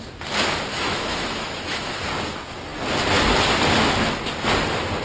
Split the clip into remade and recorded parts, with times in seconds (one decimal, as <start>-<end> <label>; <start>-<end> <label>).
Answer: 0.0-0.7 recorded; 0.7-2.0 remade; 2.0-5.0 recorded